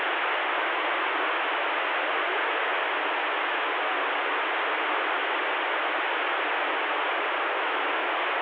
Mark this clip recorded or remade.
recorded